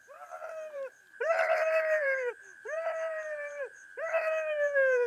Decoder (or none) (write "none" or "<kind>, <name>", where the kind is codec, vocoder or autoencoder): vocoder, BigVGAN v2